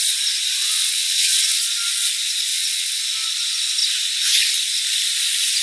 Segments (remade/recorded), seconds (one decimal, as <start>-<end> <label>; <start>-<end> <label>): 0.0-0.6 recorded; 0.6-1.6 remade; 1.6-2.5 recorded; 2.5-3.0 remade; 3.0-5.6 recorded